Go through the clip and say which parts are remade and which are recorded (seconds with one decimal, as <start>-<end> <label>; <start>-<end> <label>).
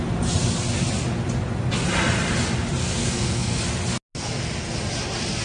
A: 0.0-2.8 recorded; 2.8-3.6 remade; 3.6-5.4 recorded